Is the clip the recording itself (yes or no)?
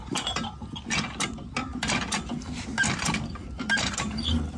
yes